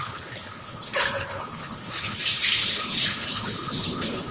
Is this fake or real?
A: fake